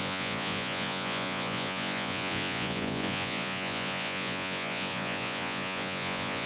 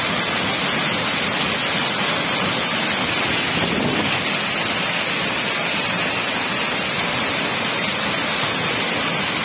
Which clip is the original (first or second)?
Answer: second